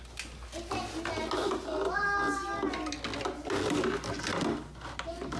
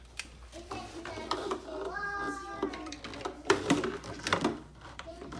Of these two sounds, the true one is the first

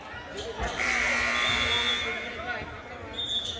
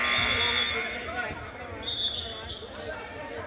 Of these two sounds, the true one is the first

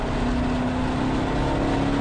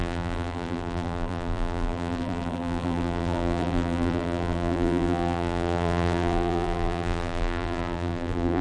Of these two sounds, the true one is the first